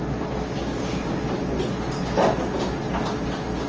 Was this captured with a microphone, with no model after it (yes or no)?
yes